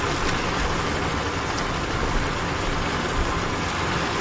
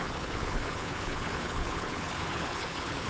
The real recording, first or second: first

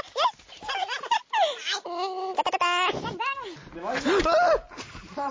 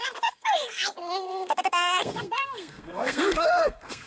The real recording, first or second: first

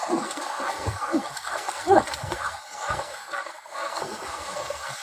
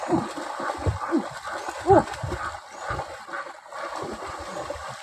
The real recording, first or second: second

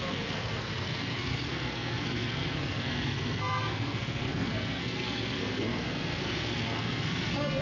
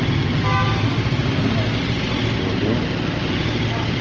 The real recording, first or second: second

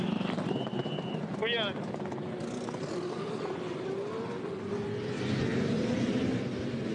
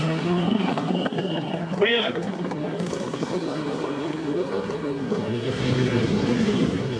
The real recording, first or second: first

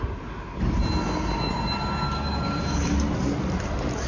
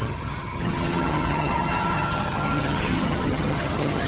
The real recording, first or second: first